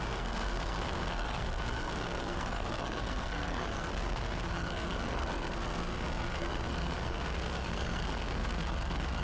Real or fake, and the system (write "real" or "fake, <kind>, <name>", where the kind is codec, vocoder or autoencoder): fake, codec, SNAC